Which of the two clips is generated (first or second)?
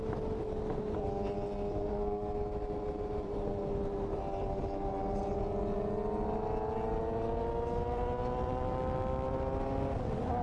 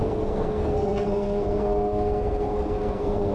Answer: second